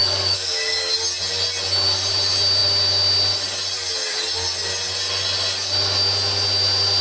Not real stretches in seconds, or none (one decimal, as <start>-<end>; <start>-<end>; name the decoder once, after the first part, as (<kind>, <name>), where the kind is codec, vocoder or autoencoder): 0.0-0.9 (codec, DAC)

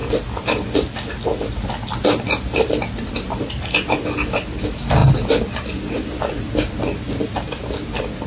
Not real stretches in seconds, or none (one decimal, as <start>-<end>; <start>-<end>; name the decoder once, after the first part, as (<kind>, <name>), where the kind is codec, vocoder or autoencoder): none

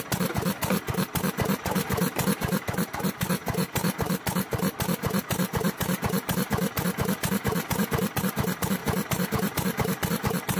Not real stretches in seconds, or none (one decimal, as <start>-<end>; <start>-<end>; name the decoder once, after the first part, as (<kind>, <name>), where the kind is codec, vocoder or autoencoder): none

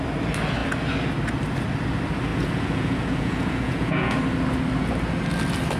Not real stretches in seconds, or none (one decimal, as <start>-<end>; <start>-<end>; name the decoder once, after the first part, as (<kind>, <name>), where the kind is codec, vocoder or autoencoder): 2.3-4.2 (vocoder, Vocos)